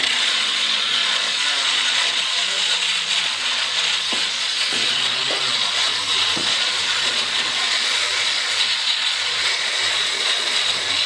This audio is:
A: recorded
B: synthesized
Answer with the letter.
B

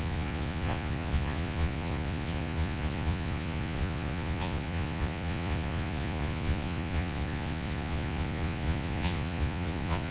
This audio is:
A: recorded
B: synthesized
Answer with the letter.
B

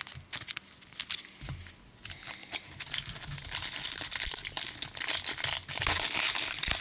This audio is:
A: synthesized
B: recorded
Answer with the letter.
B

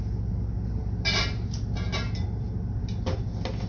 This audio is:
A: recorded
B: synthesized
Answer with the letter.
A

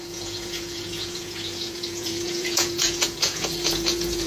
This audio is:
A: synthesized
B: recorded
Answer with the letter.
A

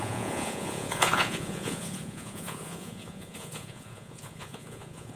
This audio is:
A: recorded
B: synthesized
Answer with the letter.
B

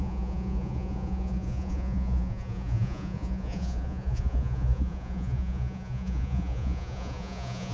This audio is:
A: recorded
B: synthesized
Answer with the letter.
B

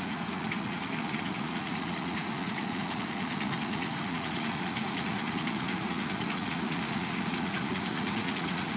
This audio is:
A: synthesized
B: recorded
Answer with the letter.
A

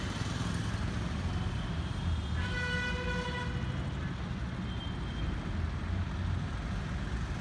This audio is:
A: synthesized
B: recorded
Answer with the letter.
B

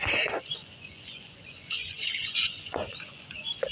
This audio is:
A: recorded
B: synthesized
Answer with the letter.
B